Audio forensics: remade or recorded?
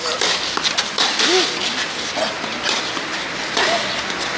recorded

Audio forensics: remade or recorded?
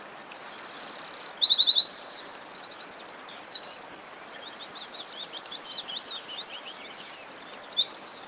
recorded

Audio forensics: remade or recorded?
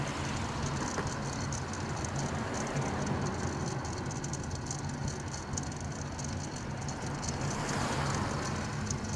recorded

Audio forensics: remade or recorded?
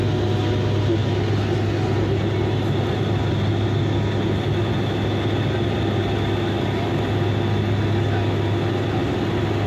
recorded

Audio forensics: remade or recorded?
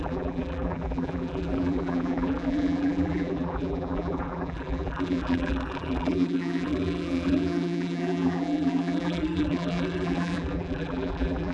remade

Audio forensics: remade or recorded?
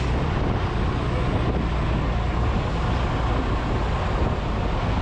recorded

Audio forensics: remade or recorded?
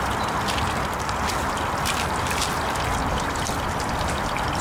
remade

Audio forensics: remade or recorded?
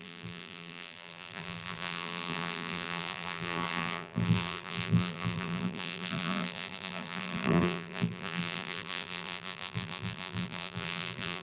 remade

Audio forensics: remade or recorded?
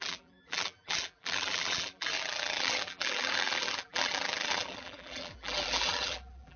remade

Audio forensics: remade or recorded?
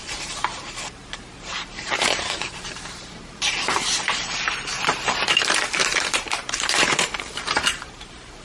remade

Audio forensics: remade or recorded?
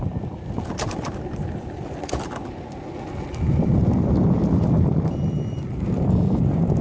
remade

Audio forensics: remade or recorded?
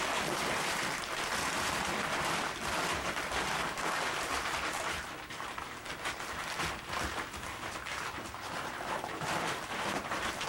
remade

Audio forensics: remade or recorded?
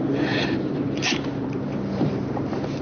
remade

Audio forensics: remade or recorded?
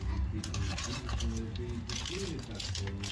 recorded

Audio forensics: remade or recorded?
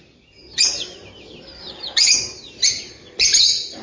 recorded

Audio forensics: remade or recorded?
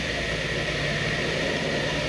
remade